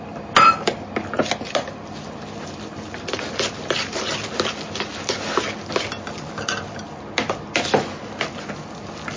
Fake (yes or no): no